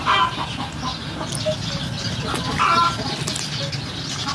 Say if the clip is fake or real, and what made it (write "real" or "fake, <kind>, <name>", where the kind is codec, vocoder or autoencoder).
real